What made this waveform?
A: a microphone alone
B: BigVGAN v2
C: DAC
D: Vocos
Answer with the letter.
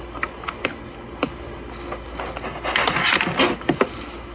A